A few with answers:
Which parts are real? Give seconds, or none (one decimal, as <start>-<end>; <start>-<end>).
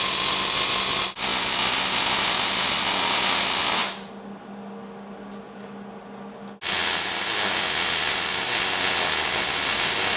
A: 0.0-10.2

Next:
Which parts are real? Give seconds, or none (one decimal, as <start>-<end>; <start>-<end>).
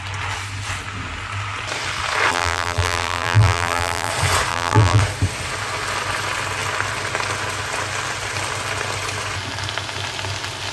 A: 0.0-2.3; 4.1-4.5; 5.0-10.7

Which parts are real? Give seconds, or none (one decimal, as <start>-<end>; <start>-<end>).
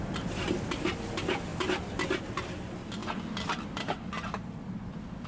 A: 0.0-5.3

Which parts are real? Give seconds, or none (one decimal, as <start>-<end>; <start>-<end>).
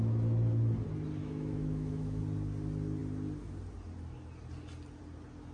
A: 0.0-1.2; 2.2-5.5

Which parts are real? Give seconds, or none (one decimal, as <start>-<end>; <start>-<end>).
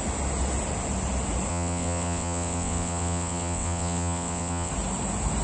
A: 0.0-1.5; 4.7-5.4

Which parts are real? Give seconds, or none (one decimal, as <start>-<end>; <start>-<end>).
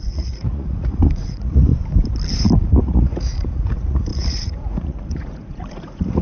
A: 1.7-2.8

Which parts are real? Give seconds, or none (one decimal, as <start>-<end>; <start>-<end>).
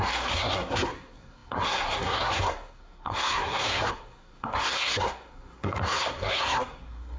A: none